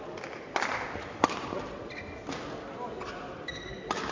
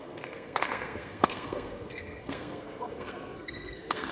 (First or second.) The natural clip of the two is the first